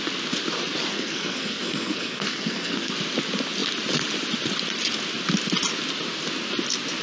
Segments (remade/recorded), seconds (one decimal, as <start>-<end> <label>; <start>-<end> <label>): 0.0-0.9 recorded; 0.9-2.9 remade; 2.9-7.0 recorded

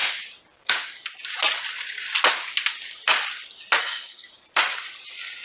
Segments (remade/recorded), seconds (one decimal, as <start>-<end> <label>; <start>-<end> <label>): 0.0-3.8 recorded; 3.8-4.3 remade; 4.3-5.4 recorded

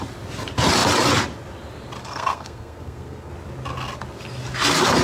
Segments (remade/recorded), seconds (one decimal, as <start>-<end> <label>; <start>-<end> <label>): 0.0-2.0 recorded; 2.0-3.3 remade; 3.3-5.0 recorded

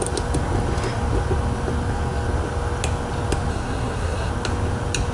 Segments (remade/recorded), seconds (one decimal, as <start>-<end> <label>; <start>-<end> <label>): 0.0-3.5 recorded; 3.5-4.3 remade; 4.3-5.1 recorded

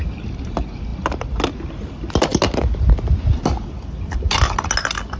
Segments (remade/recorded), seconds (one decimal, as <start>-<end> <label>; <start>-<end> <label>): 0.0-5.2 recorded

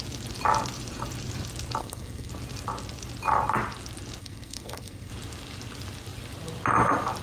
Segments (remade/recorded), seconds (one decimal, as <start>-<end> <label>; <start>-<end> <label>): 0.0-1.8 recorded; 1.8-2.3 remade; 2.3-4.2 recorded; 4.2-5.1 remade; 5.1-7.2 recorded